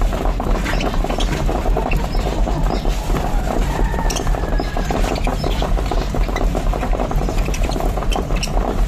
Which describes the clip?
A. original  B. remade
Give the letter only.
B